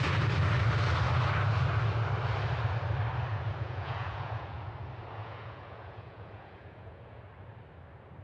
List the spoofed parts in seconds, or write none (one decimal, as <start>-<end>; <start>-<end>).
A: 3.3-4.7; 5.2-7.2